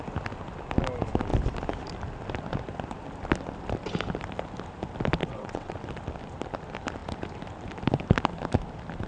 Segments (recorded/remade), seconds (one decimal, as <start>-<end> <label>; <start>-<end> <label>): 0.0-5.2 recorded; 5.2-5.8 remade; 5.8-9.1 recorded